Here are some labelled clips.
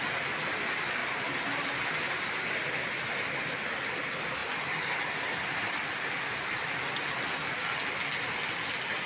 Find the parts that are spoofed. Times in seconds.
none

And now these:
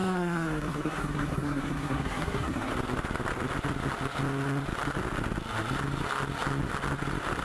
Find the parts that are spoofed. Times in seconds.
0.0-2.7 (codec, SNAC)

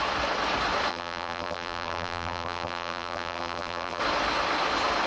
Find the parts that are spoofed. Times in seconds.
0.9-4.0 (vocoder, BigVGAN v2)

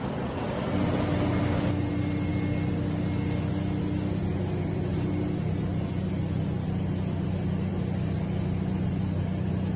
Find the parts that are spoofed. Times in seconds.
none

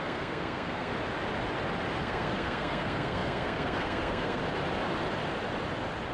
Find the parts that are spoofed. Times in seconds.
0.0-0.9 (codec, SNAC); 2.0-4.4

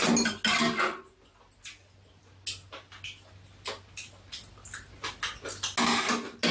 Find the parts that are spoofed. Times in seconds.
none